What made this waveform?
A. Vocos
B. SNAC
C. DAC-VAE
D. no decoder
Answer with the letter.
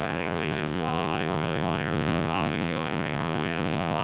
A